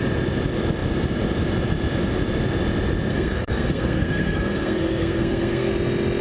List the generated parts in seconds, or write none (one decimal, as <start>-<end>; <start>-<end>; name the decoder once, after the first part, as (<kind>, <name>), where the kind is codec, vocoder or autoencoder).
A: 3.1-5.7 (codec, SNAC)